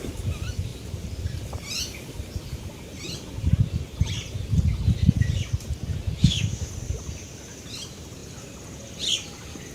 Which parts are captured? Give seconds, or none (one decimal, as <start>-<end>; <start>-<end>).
0.0-6.2; 6.7-9.7